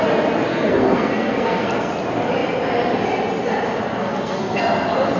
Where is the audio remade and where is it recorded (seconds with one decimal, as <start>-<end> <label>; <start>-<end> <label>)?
0.0-0.5 recorded; 0.5-1.9 remade; 1.9-4.0 recorded; 4.0-4.6 remade; 4.6-5.2 recorded